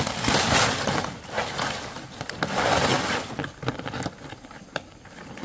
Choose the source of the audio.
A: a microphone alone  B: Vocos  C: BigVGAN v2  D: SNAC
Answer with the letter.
A